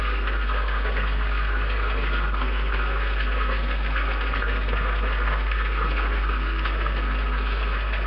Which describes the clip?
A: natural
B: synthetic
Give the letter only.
B